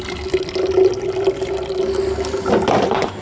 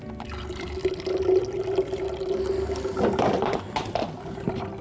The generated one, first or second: second